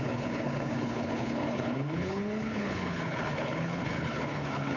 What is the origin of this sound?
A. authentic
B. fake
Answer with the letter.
B